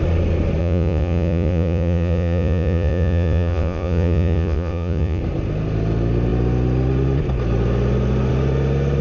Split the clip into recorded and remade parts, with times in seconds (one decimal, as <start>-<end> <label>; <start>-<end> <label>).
0.0-0.6 recorded; 0.6-5.2 remade; 5.2-9.0 recorded